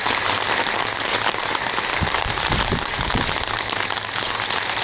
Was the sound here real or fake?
fake